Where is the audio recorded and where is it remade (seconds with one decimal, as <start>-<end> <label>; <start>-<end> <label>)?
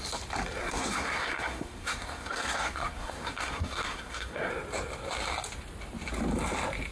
0.0-0.6 recorded; 0.6-4.5 remade; 4.5-6.9 recorded